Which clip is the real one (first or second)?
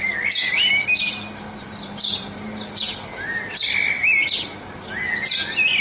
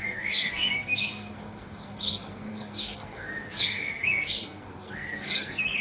first